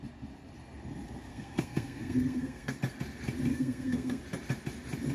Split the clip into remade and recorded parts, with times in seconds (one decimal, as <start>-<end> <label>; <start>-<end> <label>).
0.0-1.3 recorded; 1.3-2.8 remade; 2.8-3.5 recorded; 3.5-4.2 remade; 4.2-5.1 recorded